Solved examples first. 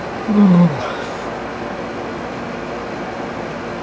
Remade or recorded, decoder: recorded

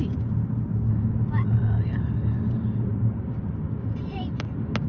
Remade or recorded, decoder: recorded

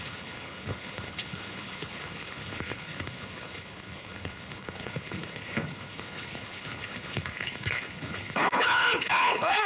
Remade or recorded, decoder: remade, codec, HILCodec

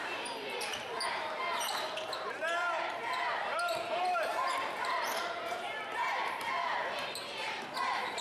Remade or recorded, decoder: remade, vocoder, BigVGAN v2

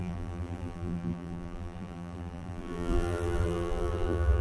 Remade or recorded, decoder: remade, vocoder, BigVGAN v2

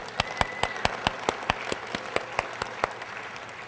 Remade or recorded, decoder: recorded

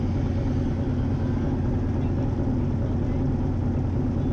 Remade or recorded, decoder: recorded